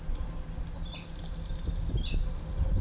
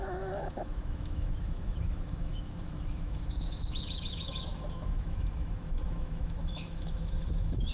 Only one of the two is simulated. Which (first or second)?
second